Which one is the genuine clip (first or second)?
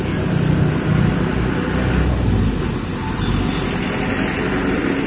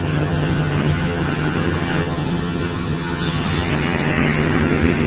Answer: first